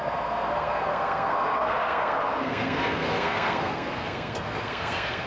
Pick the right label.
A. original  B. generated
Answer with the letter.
B